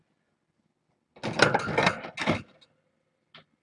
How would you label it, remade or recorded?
recorded